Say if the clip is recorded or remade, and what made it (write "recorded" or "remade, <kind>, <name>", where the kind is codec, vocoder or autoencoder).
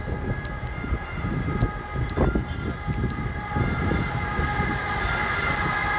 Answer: recorded